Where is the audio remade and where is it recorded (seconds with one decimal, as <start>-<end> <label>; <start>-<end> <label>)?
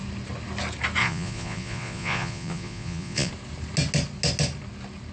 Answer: 0.0-1.0 recorded; 1.0-3.3 remade; 3.3-5.1 recorded